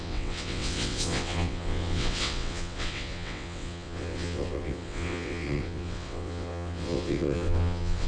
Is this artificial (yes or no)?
yes